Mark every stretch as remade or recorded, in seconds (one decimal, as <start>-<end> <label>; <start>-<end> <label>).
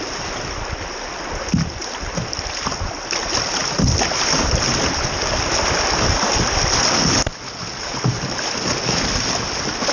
0.0-9.9 recorded